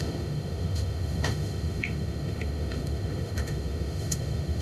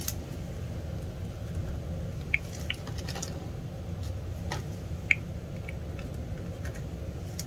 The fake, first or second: first